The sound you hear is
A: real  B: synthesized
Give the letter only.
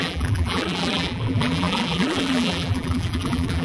B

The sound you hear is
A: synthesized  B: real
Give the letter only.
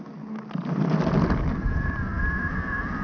B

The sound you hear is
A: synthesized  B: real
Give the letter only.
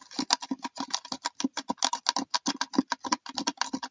B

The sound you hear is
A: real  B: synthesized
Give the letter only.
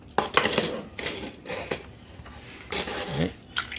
A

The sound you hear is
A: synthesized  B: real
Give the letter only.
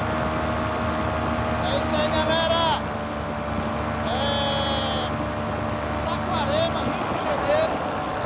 B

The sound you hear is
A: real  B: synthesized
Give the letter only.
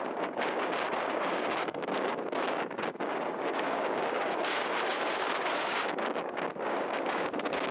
B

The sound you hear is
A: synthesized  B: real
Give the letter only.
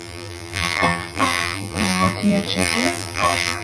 A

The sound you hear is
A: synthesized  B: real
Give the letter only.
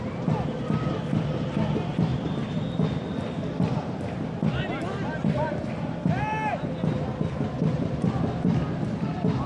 B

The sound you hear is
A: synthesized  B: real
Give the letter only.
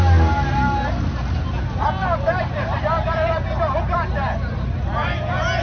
B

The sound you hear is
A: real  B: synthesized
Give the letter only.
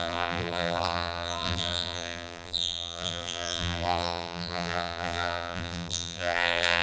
B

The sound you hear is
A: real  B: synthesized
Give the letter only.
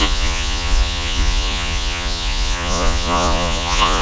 B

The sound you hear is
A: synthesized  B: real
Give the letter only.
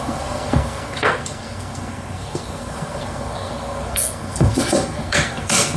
A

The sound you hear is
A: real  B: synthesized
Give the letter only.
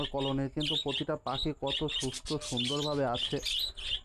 A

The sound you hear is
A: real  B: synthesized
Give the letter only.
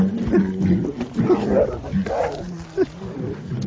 A